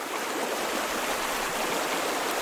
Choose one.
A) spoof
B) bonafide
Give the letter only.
B